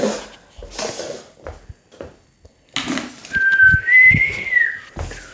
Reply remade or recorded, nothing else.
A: recorded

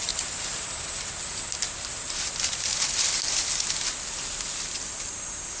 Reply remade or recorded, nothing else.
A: recorded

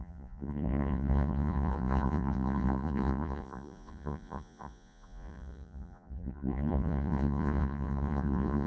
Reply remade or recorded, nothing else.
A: remade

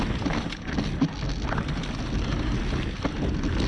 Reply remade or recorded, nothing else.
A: recorded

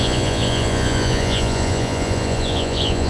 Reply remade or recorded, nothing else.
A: remade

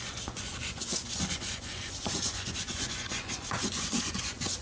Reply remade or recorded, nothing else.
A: remade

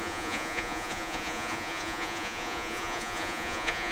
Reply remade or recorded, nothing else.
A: remade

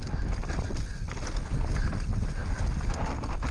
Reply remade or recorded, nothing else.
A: recorded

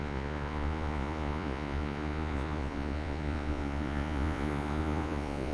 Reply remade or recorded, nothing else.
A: remade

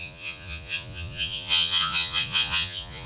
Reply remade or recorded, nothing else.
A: remade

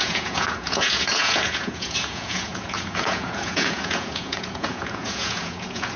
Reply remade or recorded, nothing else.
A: remade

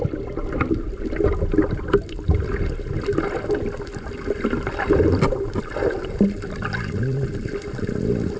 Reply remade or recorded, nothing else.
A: recorded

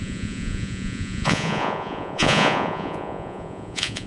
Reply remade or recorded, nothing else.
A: remade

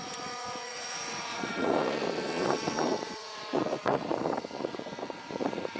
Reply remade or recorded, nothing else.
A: remade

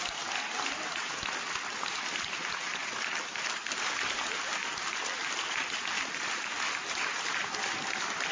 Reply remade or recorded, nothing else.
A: recorded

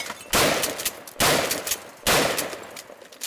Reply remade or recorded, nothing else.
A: recorded